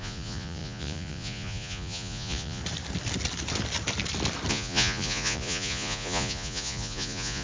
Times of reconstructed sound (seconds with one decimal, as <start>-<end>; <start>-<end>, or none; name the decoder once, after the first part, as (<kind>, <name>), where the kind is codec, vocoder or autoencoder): 0.0-2.6 (vocoder, Vocos); 4.5-7.4